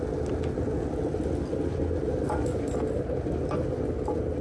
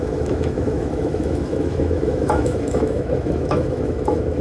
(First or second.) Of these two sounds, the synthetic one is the second